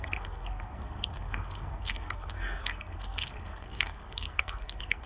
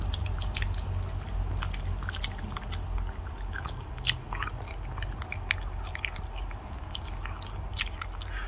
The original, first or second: second